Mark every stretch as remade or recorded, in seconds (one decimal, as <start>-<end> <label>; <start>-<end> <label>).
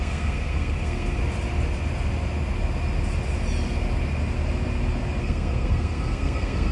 0.0-1.2 remade; 1.2-5.2 recorded; 5.2-6.7 remade